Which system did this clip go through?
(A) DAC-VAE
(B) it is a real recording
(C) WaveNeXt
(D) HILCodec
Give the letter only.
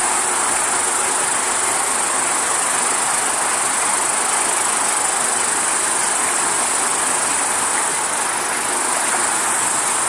B